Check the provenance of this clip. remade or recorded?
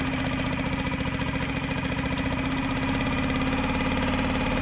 recorded